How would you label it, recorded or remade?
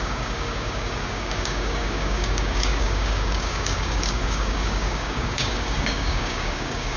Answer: remade